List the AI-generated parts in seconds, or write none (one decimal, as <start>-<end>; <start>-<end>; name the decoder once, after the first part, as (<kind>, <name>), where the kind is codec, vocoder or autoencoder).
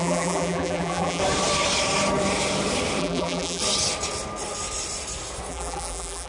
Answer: 0.0-1.2 (vocoder, BigVGAN v2); 3.0-3.6; 5.5-6.3